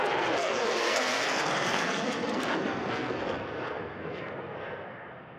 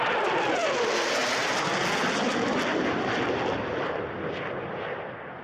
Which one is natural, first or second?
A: second